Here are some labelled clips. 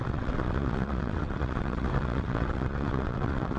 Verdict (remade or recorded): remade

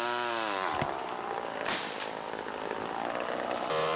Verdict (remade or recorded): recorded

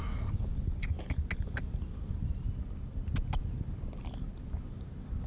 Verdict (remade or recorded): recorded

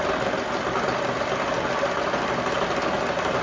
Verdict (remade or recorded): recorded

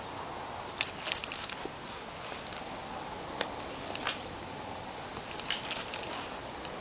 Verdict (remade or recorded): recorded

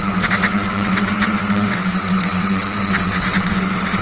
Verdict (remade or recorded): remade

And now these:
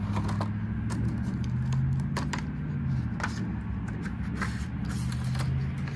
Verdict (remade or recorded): recorded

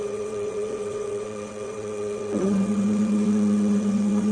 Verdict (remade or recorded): remade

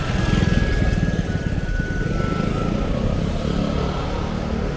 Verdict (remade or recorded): recorded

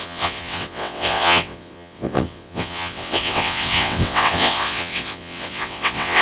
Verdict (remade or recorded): remade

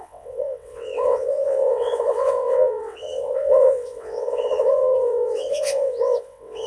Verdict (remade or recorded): remade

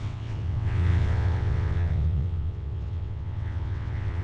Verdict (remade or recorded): remade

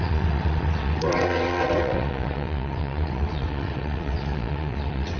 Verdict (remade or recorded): remade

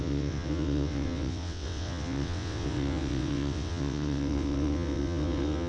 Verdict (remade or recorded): remade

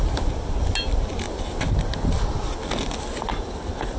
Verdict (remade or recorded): recorded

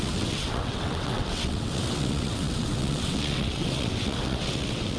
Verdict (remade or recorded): remade